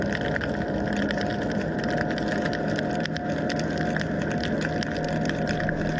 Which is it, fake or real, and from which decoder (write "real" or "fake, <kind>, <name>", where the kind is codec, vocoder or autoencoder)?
real